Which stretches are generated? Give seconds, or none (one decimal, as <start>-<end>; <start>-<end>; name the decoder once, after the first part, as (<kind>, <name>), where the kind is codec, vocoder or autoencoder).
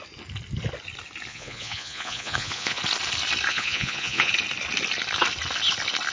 1.3-2.8 (vocoder, Vocos); 3.5-4.3